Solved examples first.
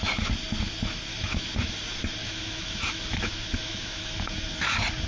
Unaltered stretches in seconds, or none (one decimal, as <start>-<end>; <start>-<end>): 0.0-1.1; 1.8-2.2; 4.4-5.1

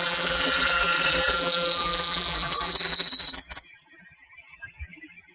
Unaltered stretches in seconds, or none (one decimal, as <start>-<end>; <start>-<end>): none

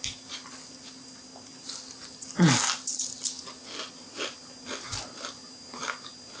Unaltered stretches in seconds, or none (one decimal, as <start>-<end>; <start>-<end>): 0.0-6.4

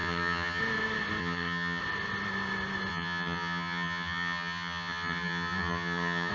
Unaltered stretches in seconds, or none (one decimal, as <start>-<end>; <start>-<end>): 0.6-1.2; 1.8-2.9

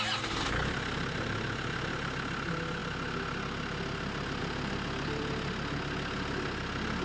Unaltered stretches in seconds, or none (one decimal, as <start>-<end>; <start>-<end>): 0.0-7.0

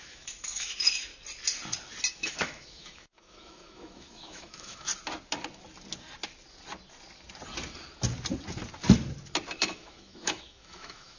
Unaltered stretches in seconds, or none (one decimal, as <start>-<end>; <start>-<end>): 1.1-2.1; 4.9-9.6

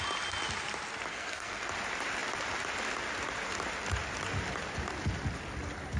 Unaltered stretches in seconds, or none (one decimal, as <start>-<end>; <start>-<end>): 0.0-1.1; 1.6-6.0

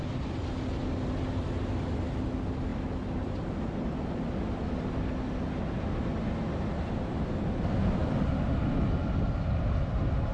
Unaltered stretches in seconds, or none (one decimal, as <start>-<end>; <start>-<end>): 0.0-8.0; 8.6-10.3